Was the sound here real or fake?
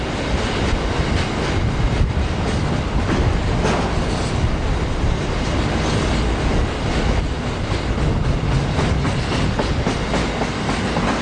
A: real